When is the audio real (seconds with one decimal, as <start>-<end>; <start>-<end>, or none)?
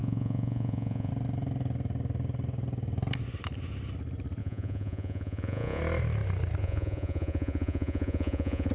1.1-4.4; 5.8-6.6